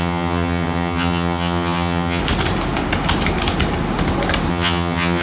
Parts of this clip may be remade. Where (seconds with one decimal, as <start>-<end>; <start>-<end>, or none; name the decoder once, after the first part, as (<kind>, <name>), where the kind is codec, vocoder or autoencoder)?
0.0-2.2 (vocoder, HiFi-GAN); 4.5-5.2